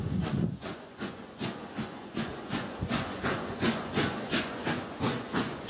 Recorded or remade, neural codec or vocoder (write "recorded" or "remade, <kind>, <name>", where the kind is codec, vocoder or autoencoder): remade, vocoder, Vocos